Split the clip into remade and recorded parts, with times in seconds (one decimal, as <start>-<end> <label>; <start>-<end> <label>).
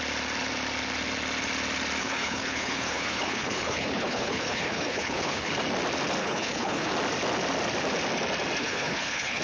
0.0-2.0 recorded; 2.0-5.5 remade; 5.5-6.2 recorded; 6.2-6.9 remade; 6.9-8.6 recorded; 8.6-9.4 remade